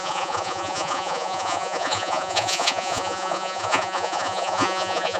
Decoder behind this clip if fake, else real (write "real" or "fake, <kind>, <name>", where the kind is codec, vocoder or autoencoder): fake, vocoder, Vocos